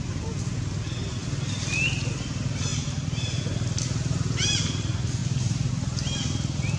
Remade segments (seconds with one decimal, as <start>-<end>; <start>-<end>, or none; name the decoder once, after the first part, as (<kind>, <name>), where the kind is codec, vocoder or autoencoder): 2.7-3.4 (vocoder, BigVGAN v2); 5.2-5.7